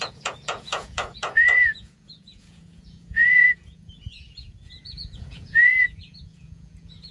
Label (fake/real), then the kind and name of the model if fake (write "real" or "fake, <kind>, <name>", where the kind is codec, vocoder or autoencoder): fake, vocoder, Vocos